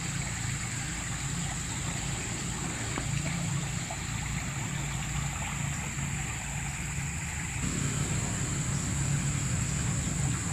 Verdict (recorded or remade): recorded